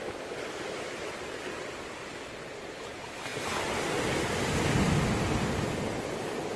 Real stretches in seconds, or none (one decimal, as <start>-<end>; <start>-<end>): 0.0-6.6